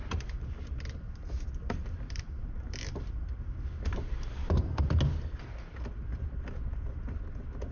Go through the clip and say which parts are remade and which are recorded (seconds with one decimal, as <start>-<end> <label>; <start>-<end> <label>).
0.0-0.8 remade; 0.8-1.6 recorded; 1.6-4.8 remade; 4.8-7.7 recorded

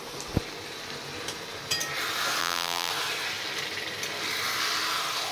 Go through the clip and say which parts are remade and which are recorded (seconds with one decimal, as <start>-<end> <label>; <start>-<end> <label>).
0.0-2.4 recorded; 2.4-2.9 remade; 2.9-5.3 recorded

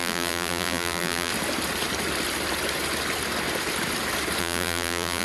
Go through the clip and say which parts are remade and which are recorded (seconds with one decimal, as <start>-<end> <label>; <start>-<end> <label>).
0.0-1.3 remade; 1.3-4.4 recorded; 4.4-5.2 remade